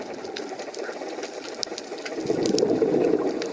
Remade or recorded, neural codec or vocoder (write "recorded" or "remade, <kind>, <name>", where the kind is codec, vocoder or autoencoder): recorded